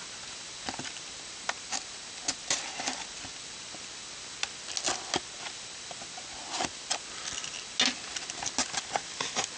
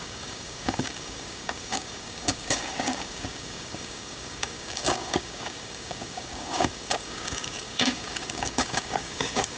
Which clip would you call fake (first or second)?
second